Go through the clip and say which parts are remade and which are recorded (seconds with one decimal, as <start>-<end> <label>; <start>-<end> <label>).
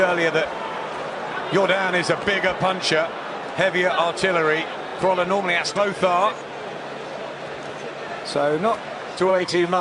0.0-9.3 recorded; 9.3-9.8 remade